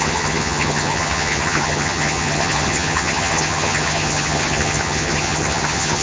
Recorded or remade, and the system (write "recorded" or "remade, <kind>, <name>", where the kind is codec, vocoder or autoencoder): remade, vocoder, HiFi-GAN